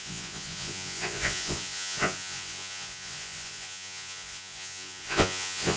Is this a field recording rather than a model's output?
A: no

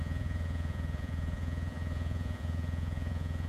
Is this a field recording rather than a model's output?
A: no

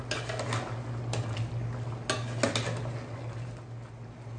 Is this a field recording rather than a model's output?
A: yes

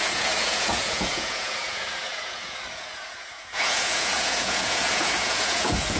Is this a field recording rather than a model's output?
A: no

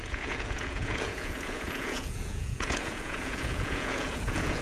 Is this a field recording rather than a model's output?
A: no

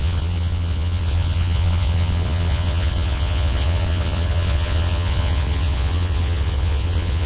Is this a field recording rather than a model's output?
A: no